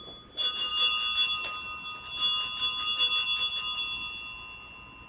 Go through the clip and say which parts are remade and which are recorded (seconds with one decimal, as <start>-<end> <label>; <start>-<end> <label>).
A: 0.0-5.1 recorded